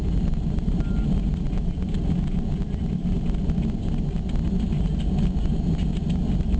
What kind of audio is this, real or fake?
real